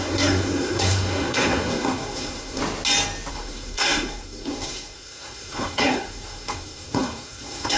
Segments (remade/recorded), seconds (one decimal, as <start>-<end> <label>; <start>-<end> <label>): 0.0-2.6 remade; 2.6-3.3 recorded; 3.3-7.8 remade